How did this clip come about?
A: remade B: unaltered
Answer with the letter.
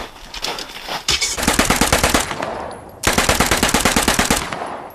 B